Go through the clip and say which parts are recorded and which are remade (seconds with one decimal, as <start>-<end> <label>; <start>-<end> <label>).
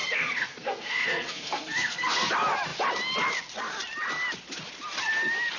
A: 0.0-2.3 remade; 2.3-5.6 recorded